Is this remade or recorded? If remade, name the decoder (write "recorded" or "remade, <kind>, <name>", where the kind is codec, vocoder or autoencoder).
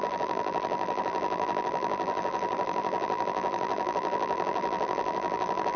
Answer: remade, vocoder, BigVGAN v2